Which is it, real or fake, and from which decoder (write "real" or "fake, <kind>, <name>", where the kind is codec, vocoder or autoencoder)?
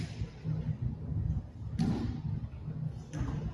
real